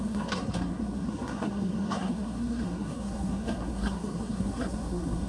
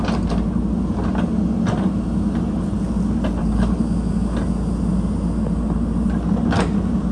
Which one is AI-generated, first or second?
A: first